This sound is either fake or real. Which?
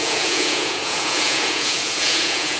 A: fake